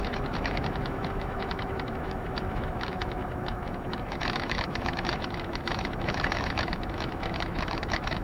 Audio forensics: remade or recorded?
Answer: remade